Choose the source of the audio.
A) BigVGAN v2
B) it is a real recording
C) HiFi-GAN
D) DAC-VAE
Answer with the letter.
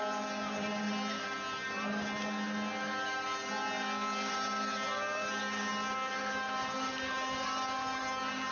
B